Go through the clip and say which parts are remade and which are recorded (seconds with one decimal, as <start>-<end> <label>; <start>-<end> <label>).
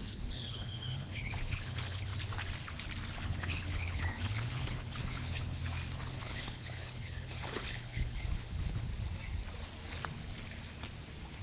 0.0-2.1 remade; 2.1-3.2 recorded; 3.2-5.6 remade; 5.6-6.2 recorded; 6.2-8.9 remade; 8.9-11.4 recorded